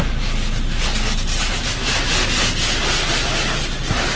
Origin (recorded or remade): recorded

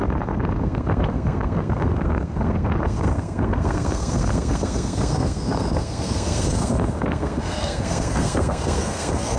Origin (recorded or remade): remade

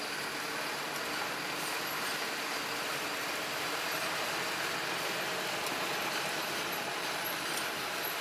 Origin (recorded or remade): recorded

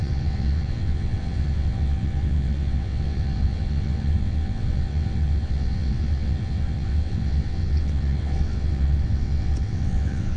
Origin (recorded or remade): remade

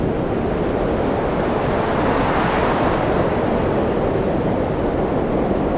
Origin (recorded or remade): recorded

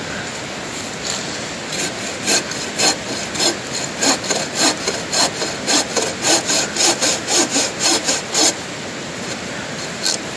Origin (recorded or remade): recorded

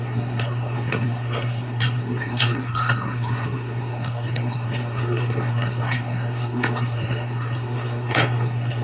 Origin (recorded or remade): remade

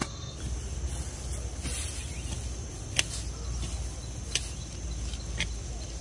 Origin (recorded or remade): recorded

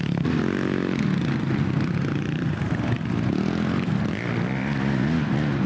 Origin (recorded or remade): recorded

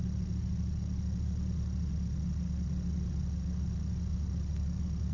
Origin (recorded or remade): recorded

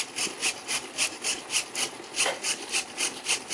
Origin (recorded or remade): recorded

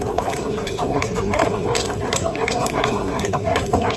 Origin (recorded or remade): remade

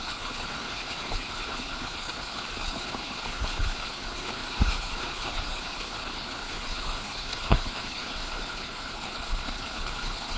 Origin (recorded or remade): remade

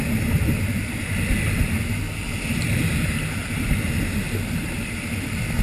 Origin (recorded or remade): recorded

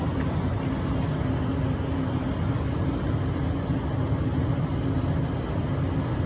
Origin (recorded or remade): recorded